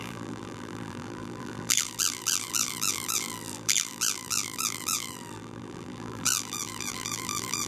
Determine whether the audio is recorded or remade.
remade